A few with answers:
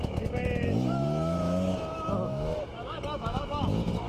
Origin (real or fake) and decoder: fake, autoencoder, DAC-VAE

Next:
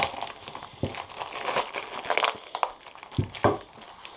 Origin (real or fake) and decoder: real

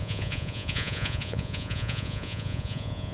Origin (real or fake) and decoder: fake, vocoder, Vocos